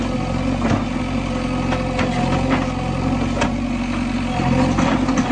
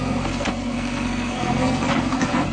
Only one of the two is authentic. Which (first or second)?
first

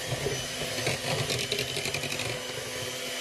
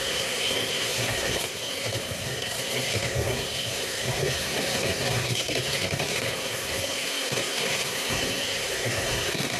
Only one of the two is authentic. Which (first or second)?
first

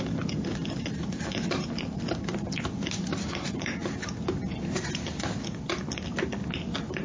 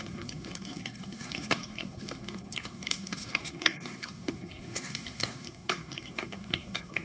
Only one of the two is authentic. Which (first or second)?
first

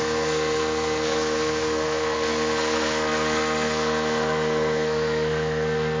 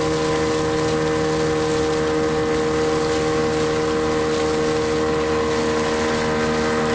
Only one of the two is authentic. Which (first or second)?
second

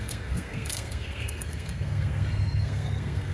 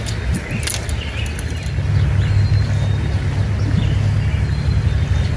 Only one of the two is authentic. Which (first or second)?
second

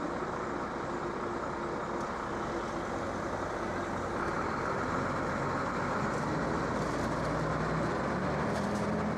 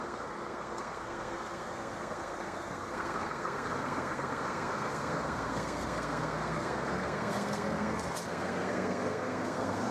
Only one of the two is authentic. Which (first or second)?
first